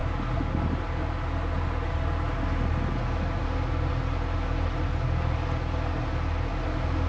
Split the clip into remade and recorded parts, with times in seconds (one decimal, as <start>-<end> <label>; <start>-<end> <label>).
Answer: 0.0-7.1 recorded